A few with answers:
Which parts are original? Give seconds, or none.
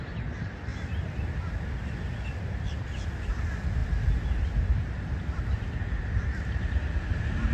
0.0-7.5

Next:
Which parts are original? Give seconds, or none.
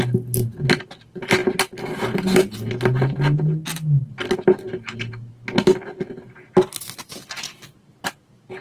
0.0-8.6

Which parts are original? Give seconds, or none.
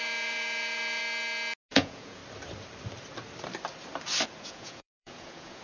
1.0-1.7; 2.2-4.4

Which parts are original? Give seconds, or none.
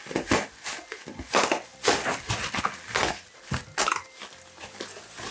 0.0-5.3